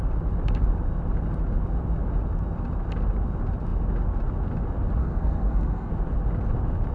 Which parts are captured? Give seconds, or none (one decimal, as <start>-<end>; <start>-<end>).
0.0-5.0; 5.9-6.9